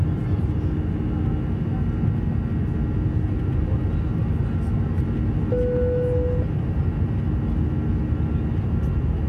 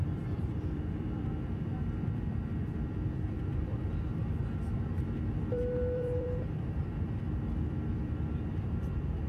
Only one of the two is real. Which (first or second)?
first